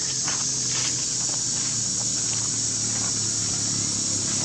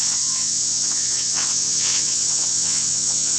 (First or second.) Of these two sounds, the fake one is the second